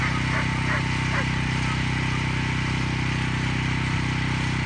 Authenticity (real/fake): real